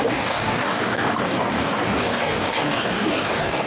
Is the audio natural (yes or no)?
no